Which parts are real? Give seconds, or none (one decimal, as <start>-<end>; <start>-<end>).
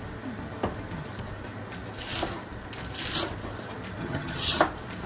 0.0-4.0; 4.6-5.1